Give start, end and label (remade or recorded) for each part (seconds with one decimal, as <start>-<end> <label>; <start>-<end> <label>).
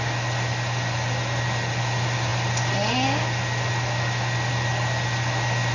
0.0-5.7 recorded